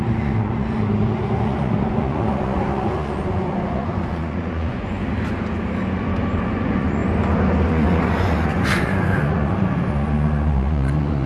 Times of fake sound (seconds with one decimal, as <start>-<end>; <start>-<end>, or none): 0.0-5.0; 6.0-7.0; 7.7-11.3